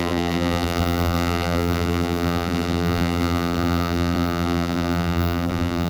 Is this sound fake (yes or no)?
yes